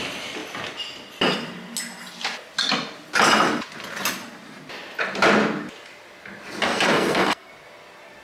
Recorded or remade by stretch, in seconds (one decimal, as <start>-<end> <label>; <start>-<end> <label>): 0.0-6.7 recorded; 6.7-7.5 remade; 7.5-8.2 recorded